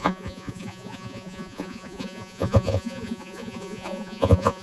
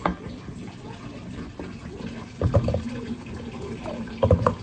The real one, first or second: second